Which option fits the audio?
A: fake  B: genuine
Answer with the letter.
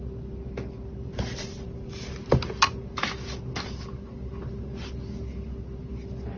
B